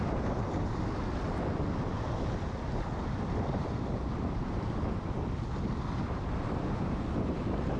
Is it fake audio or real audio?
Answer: real